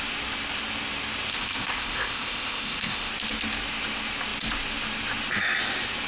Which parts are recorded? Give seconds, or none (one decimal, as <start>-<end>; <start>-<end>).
0.0-1.3; 3.1-6.1

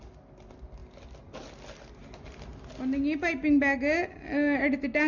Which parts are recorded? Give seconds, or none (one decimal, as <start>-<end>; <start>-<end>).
0.0-5.1

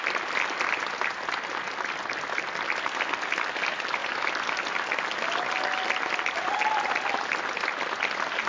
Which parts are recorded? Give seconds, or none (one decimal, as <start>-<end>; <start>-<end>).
0.0-8.5